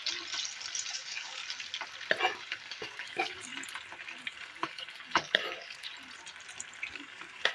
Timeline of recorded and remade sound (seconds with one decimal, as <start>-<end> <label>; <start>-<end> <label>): 0.0-0.9 recorded; 0.9-1.4 remade; 1.4-2.2 recorded; 2.2-3.5 remade; 3.5-4.2 recorded; 4.2-5.9 remade; 5.9-6.9 recorded; 6.9-7.5 remade

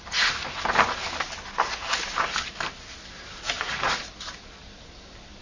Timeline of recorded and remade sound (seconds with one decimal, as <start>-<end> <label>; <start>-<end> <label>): 0.0-5.4 recorded